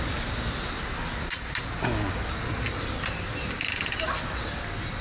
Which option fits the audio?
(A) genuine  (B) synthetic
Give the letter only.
A